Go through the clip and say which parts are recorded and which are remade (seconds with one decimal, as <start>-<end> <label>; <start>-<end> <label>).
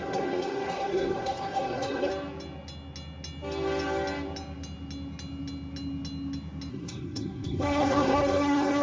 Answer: 0.0-2.1 remade; 2.1-6.7 recorded; 6.7-8.8 remade